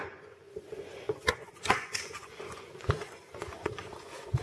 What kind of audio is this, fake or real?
fake